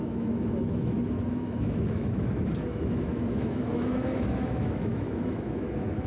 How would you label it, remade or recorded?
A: remade